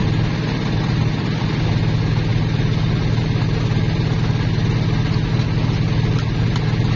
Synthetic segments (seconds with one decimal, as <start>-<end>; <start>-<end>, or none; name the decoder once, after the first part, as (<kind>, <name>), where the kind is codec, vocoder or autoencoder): none